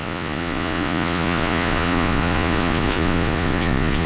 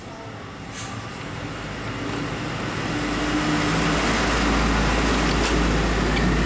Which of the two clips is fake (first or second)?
first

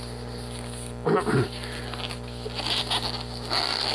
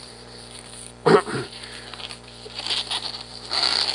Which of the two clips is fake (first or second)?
second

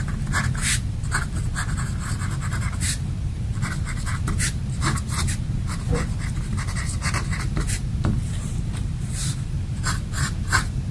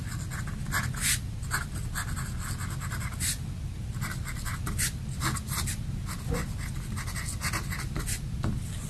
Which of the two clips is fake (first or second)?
first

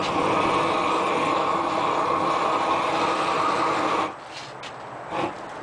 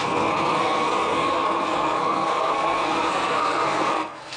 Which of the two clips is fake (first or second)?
second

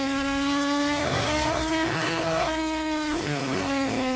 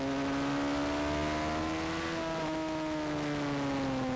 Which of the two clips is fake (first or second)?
first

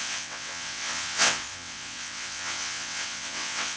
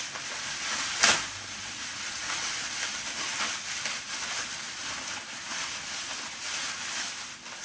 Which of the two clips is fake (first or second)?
first